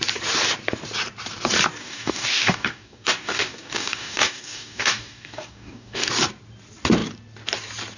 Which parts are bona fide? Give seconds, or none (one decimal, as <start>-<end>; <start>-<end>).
0.0-1.8; 6.1-8.0